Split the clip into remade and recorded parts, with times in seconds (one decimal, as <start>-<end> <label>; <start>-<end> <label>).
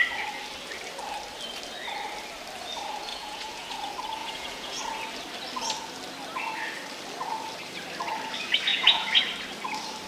0.0-3.1 recorded; 3.1-3.7 remade; 3.7-4.2 recorded; 4.2-4.8 remade; 4.8-8.7 recorded; 8.7-9.2 remade; 9.2-10.1 recorded